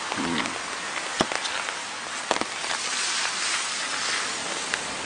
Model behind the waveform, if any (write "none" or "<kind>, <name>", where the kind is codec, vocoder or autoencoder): none